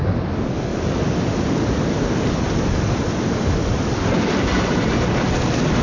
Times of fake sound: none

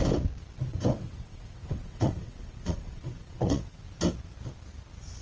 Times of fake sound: 0.7-3.8